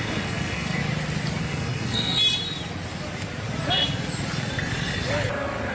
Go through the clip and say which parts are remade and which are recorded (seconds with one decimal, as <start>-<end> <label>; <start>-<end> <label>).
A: 0.0-0.8 remade; 0.8-1.4 recorded; 1.4-2.2 remade; 2.2-5.7 recorded